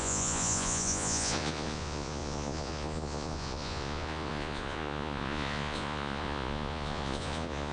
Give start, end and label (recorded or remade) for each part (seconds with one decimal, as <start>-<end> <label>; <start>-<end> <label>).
0.0-7.7 remade